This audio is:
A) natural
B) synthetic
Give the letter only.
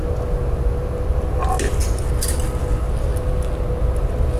A